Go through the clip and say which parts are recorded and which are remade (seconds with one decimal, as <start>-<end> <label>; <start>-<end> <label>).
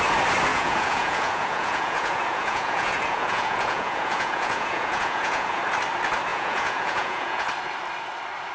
0.0-0.5 recorded; 0.5-5.6 remade; 5.6-6.3 recorded; 6.3-7.5 remade; 7.5-8.5 recorded